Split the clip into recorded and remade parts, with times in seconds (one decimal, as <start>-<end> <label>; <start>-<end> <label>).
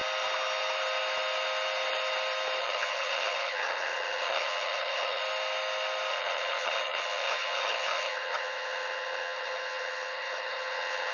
0.0-2.6 recorded; 2.6-5.2 remade; 5.2-6.1 recorded; 6.1-11.1 remade